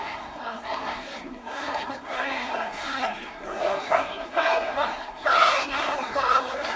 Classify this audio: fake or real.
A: fake